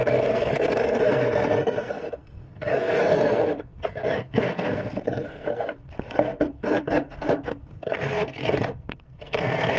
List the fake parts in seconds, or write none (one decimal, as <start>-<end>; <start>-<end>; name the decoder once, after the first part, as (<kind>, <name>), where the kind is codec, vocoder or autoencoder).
0.0-9.8 (codec, SNAC)